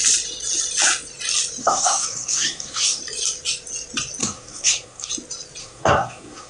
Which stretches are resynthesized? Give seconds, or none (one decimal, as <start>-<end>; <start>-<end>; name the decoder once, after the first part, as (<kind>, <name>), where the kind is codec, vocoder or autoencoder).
1.6-3.0 (codec, SNAC); 4.2-5.1; 5.6-6.5